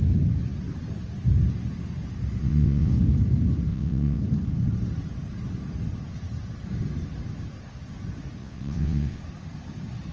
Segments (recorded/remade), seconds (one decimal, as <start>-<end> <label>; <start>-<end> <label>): 0.0-2.4 recorded; 2.4-2.9 remade; 2.9-3.7 recorded; 3.7-4.2 remade; 4.2-8.4 recorded; 8.4-9.2 remade; 9.2-10.1 recorded